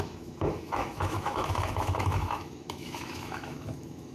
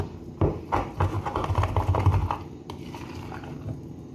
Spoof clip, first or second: first